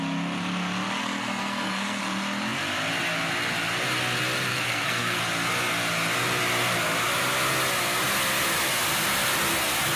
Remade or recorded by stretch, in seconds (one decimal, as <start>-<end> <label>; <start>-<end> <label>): 0.0-1.0 recorded; 1.0-2.0 remade; 2.0-4.5 recorded; 4.5-5.2 remade; 5.2-10.0 recorded